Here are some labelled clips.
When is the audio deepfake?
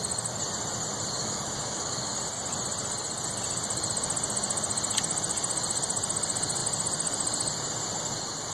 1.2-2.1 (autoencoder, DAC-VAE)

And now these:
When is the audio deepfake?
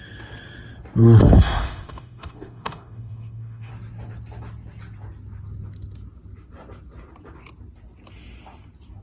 1.2-3.7 (autoencoder, DAC-VAE)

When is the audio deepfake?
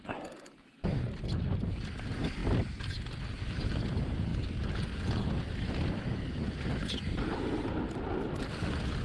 none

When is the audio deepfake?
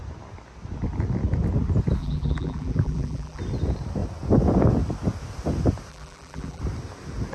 2.0-3.4 (vocoder, BigVGAN v2); 5.9-6.6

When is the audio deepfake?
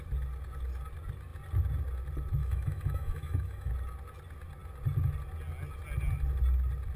2.4-3.7 (autoencoder, DAC-VAE)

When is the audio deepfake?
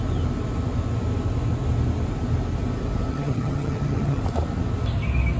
3.1-4.2 (vocoder, HiFi-GAN)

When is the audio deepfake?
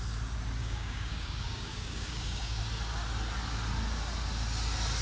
0.6-2.6 (codec, DAC)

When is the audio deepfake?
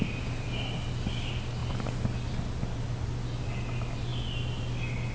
none